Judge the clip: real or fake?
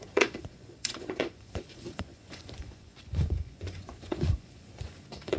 fake